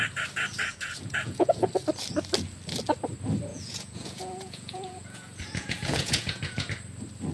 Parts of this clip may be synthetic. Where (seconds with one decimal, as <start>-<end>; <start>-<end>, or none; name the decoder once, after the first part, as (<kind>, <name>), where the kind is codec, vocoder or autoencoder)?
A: 0.7-1.7 (vocoder, Vocos); 3.5-6.7